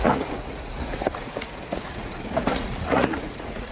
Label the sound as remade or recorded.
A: remade